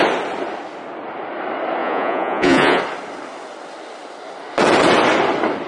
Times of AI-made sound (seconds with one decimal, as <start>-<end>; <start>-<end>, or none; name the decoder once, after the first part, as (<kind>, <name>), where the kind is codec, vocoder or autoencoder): 1.8-2.8 (vocoder, Vocos)